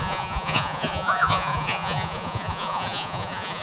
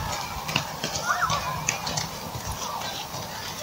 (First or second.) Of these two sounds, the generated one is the first